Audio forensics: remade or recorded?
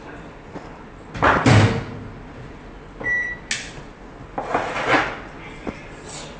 recorded